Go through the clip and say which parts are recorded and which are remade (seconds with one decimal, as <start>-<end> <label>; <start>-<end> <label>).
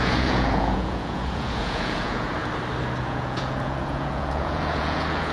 0.0-2.4 remade; 2.4-3.0 recorded; 3.0-5.3 remade